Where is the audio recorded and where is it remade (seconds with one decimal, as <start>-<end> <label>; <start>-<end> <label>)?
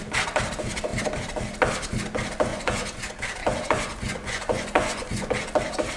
0.0-2.5 recorded; 2.5-3.0 remade; 3.0-3.4 recorded; 3.4-5.3 remade; 5.3-6.0 recorded